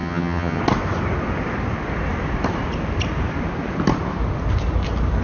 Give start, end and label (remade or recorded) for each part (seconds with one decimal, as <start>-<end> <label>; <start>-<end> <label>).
0.0-0.6 remade; 0.6-5.2 recorded